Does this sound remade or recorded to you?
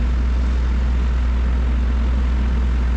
recorded